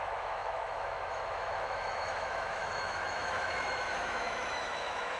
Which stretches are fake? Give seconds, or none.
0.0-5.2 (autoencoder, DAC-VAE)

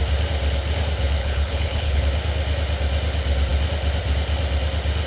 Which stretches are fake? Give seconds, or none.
1.2-2.0 (codec, HILCodec)